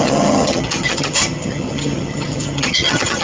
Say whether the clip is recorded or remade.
remade